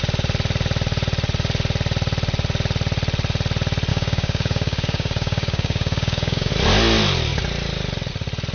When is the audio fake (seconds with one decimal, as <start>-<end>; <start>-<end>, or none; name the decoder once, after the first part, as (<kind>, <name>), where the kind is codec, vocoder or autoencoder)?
3.9-6.5 (codec, DAC)

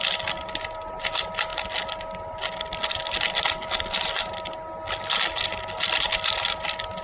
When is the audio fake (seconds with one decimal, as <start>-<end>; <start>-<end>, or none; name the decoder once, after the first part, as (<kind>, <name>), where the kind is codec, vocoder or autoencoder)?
none

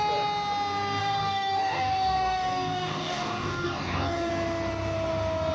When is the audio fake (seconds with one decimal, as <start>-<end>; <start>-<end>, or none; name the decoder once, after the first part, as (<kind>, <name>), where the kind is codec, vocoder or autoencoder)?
1.0-4.3 (codec, DAC)